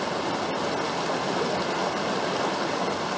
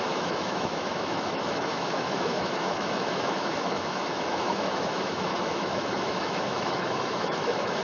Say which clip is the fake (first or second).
second